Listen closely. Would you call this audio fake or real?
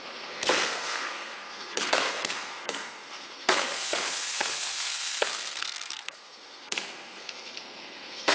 fake